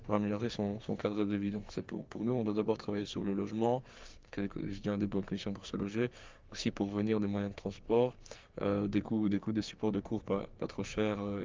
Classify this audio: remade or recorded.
remade